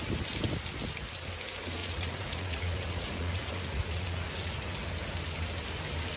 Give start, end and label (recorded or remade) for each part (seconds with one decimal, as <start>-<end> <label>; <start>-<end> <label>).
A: 0.0-1.8 recorded; 1.8-4.9 remade; 4.9-6.2 recorded